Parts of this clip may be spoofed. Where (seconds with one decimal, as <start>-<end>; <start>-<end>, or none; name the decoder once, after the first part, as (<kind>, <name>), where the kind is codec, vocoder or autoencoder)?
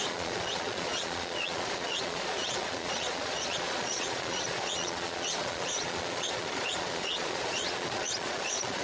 0.0-8.8 (vocoder, Vocos)